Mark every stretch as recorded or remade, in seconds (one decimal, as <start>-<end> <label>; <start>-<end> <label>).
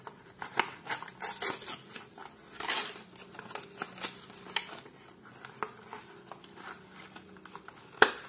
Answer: 0.0-8.3 recorded